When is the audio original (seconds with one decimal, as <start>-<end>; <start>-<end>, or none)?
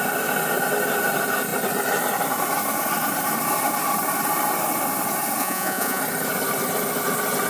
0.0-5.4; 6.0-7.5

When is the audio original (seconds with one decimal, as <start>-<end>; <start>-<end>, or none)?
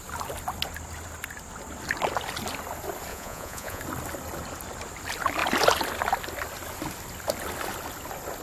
0.0-3.1; 3.8-8.4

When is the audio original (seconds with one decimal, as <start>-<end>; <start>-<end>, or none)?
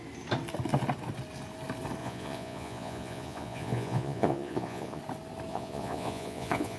0.0-2.0; 5.0-5.5